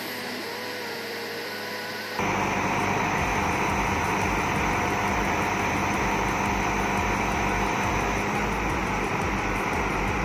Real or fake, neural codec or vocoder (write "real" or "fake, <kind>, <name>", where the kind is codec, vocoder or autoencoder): real